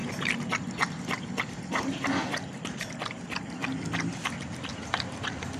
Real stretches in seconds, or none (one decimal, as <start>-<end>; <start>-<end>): 0.0-5.6